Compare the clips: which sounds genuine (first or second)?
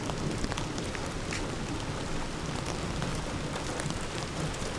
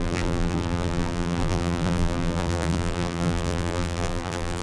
first